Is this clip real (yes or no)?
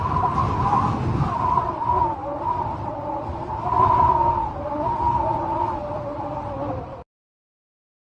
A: yes